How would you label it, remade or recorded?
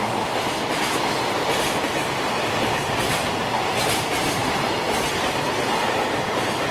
remade